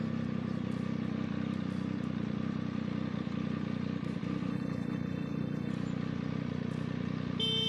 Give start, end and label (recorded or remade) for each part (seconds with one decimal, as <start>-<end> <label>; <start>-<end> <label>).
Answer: 0.0-4.5 recorded; 4.5-5.7 remade; 5.7-7.7 recorded